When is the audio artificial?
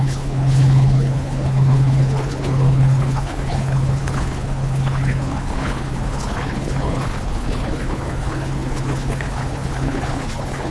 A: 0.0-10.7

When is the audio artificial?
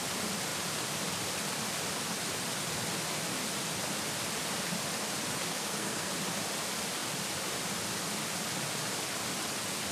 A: 5.5-6.1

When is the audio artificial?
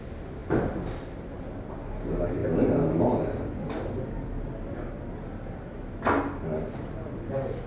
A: none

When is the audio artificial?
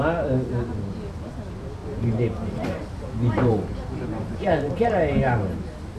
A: 1.8-4.9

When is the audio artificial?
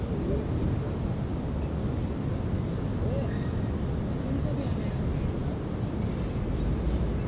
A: none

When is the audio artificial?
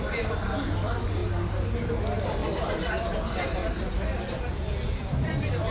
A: 1.2-1.9; 2.4-3.1; 3.6-5.7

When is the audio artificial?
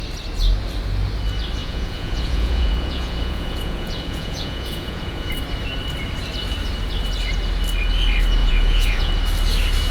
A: 1.6-5.3; 8.4-9.1